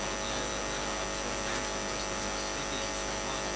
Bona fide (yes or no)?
yes